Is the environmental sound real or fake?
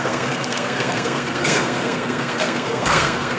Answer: fake